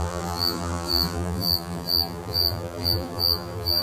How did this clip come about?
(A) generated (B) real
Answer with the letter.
A